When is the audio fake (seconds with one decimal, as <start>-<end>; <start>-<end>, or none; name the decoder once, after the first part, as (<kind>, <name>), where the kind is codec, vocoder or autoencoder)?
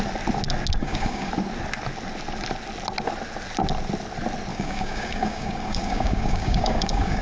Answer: 0.8-1.3 (codec, DAC); 4.5-7.2